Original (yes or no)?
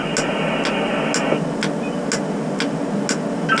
yes